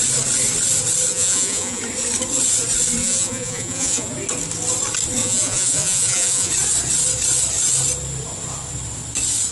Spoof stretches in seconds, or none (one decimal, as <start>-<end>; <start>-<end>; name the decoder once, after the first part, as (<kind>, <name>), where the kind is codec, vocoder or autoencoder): 1.1-1.8 (vocoder, Vocos); 3.0-4.1; 5.2-6.5